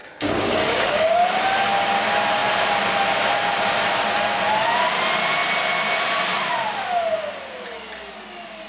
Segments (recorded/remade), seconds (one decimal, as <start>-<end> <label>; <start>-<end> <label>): 0.0-1.1 remade; 1.1-8.7 recorded